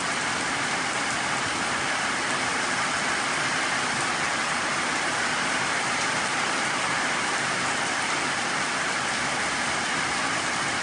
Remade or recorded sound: recorded